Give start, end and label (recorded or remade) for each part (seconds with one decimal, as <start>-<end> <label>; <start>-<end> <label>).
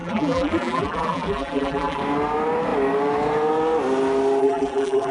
0.0-2.0 remade; 2.0-4.4 recorded; 4.4-5.1 remade